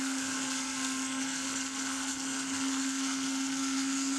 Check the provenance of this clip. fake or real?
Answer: fake